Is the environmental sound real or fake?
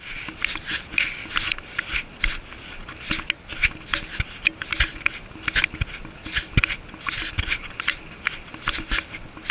real